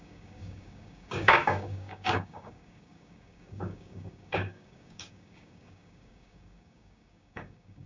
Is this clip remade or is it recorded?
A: remade